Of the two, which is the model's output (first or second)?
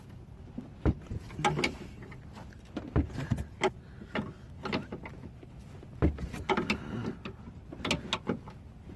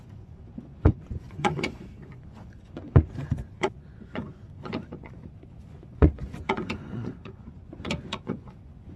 second